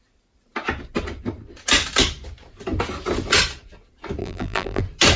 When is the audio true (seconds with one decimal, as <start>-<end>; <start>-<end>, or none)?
0.0-4.2; 4.8-5.2